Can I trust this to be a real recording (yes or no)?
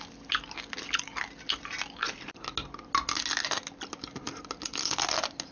yes